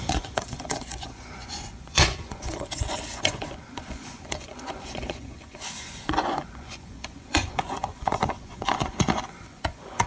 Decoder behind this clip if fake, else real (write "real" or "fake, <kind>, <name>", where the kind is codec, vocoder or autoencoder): fake, vocoder, Vocos